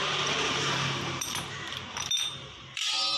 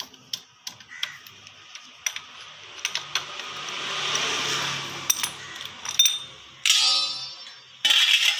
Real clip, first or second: second